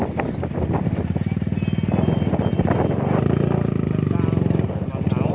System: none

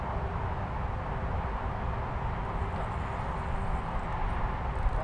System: none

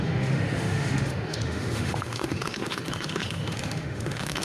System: autoencoder, DAC-VAE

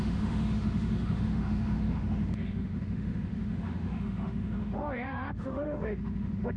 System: autoencoder, DAC-VAE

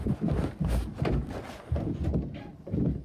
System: none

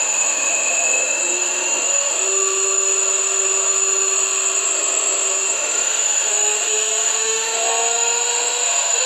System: autoencoder, DAC-VAE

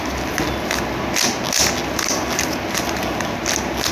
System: none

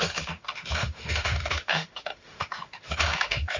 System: autoencoder, DAC-VAE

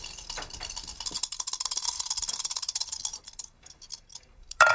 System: none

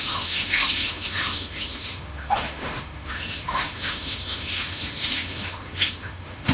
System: autoencoder, DAC-VAE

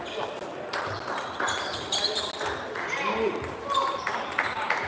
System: none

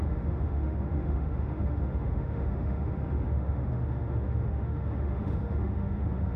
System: autoencoder, DAC-VAE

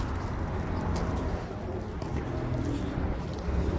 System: none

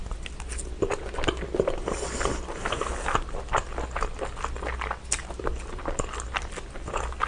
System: none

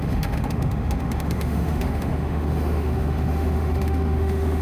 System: autoencoder, DAC-VAE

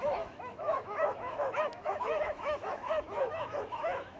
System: autoencoder, DAC-VAE